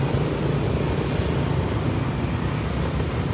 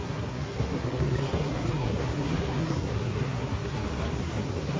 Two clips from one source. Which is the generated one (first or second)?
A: second